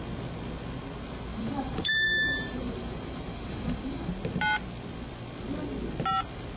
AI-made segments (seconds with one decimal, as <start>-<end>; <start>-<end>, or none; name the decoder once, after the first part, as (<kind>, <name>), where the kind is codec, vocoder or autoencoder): 1.3-4.1 (vocoder, BigVGAN v2)